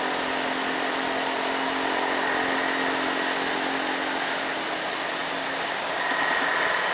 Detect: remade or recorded recorded